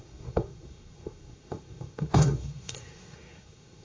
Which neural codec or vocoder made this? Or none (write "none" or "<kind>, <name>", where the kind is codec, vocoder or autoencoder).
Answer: codec, SNAC